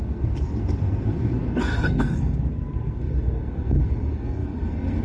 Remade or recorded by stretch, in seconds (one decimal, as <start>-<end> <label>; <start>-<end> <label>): 0.0-5.0 remade